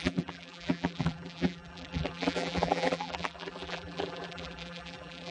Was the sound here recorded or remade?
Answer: remade